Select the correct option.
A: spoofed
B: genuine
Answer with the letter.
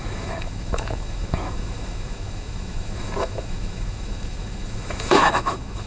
A